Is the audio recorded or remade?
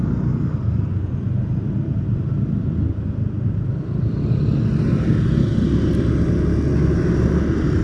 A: recorded